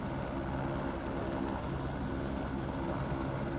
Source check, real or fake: real